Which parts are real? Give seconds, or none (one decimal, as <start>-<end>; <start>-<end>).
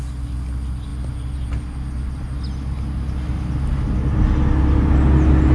0.0-5.5